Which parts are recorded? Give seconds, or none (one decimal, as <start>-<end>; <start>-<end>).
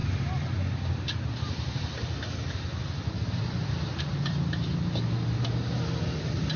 0.0-6.6